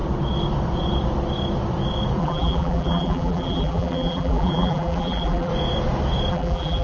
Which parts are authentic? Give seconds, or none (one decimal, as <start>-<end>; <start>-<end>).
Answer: 0.0-2.2; 5.5-6.3